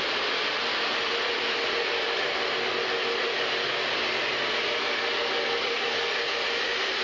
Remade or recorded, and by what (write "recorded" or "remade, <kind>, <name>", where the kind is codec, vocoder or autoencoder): recorded